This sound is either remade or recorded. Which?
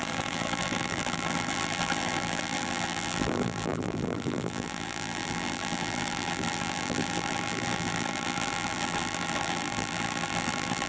remade